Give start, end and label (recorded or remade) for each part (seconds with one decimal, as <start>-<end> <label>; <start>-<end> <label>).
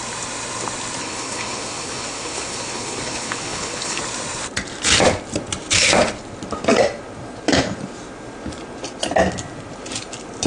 0.0-1.0 recorded; 1.0-4.0 remade; 4.0-10.5 recorded